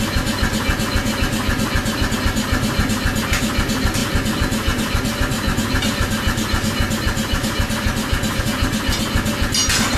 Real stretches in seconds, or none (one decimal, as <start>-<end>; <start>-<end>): 0.0-10.0